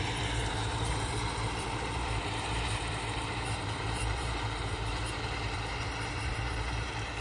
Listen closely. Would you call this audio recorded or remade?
remade